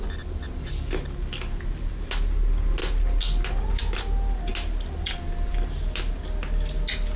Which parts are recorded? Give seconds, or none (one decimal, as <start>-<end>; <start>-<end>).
0.0-7.2